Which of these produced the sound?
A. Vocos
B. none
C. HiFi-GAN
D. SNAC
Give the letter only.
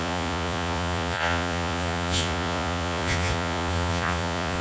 A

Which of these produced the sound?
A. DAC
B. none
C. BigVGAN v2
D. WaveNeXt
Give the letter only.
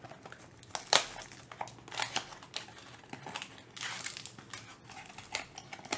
B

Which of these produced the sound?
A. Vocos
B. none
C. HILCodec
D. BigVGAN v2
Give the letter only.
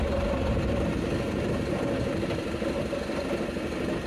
D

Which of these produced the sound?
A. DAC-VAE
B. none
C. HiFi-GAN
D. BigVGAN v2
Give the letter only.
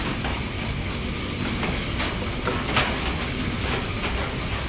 B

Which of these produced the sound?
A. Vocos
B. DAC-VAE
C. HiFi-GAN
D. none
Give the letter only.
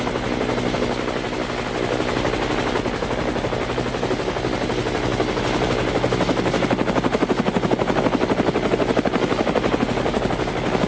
D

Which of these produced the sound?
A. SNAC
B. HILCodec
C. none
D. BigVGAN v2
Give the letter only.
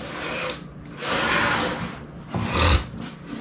C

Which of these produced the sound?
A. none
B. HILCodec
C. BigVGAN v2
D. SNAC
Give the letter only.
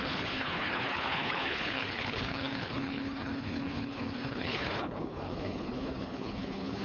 B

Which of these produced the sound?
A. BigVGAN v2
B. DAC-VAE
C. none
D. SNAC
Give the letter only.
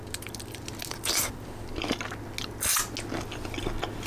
C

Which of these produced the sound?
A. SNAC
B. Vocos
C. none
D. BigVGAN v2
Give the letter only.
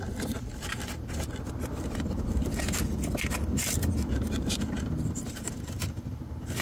C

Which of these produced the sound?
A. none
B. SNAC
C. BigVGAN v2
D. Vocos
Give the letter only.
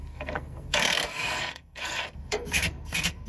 B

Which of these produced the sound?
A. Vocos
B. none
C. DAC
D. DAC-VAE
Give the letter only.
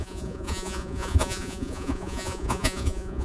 A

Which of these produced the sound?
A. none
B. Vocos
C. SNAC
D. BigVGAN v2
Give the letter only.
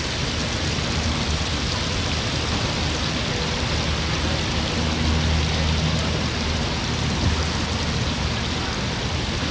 A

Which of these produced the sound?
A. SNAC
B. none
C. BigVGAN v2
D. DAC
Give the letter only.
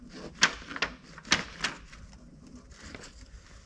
B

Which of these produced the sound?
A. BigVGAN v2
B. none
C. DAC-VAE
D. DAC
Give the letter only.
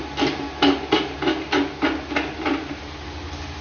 B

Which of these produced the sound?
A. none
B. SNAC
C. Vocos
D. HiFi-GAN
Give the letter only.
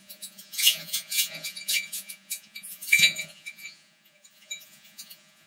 C